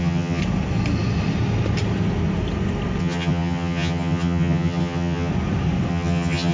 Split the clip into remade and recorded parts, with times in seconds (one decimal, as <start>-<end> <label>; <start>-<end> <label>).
0.0-0.4 remade; 0.4-3.0 recorded; 3.0-5.3 remade; 5.3-5.9 recorded; 5.9-6.5 remade